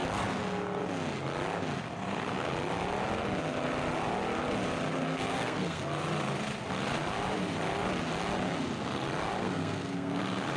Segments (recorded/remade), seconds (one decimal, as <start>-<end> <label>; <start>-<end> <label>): 0.0-5.0 recorded; 5.0-5.8 remade; 5.8-9.4 recorded; 9.4-10.2 remade; 10.2-10.6 recorded